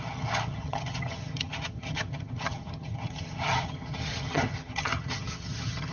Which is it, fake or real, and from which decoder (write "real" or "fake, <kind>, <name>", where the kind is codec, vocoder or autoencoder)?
fake, vocoder, HiFi-GAN